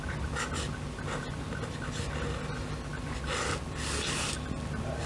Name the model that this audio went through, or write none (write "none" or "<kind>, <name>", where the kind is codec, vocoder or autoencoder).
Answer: none